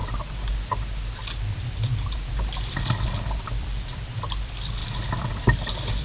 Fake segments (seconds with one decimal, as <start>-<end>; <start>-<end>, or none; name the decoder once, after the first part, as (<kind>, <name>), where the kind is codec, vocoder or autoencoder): 3.6-4.8 (vocoder, BigVGAN v2)